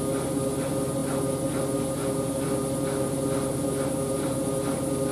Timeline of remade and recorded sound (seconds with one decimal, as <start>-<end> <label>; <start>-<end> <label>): 0.0-5.1 recorded